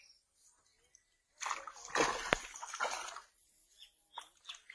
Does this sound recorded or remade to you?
recorded